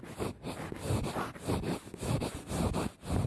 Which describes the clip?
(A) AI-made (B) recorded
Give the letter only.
B